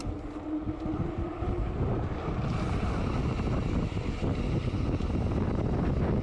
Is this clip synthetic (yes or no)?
no